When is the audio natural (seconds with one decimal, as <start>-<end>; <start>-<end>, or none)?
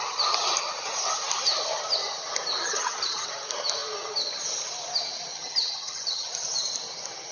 0.0-2.6; 3.3-5.3; 6.3-7.3